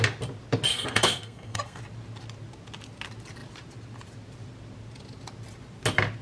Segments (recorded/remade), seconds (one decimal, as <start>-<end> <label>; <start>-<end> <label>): 0.0-0.7 recorded; 0.7-1.8 remade; 1.8-6.2 recorded